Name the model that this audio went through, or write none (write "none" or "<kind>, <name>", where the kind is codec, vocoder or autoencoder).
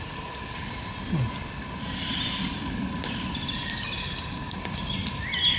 none